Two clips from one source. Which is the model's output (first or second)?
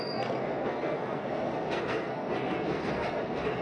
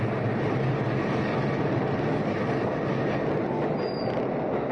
first